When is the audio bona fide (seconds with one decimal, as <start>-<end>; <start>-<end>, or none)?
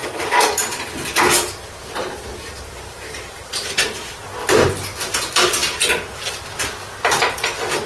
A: 0.9-2.3; 4.2-7.9